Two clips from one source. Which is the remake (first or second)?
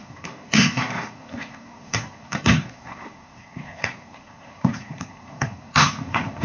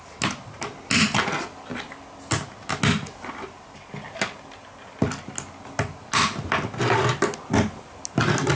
first